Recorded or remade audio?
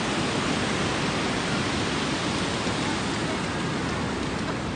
recorded